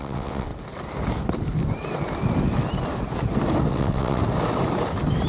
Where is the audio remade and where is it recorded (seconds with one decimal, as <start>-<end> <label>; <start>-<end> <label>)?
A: 0.0-0.5 remade; 0.5-3.7 recorded; 3.7-4.2 remade; 4.2-5.3 recorded